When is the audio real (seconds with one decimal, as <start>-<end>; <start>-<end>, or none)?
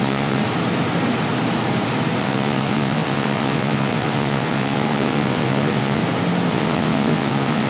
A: 0.4-2.2; 6.0-6.5